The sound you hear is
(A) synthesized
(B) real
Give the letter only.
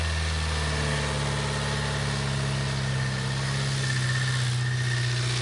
B